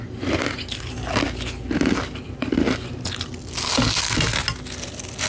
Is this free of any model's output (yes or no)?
yes